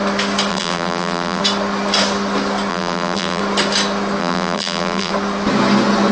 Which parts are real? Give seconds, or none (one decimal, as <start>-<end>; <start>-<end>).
0.0-0.5; 1.4-2.7; 3.4-4.2; 5.1-6.1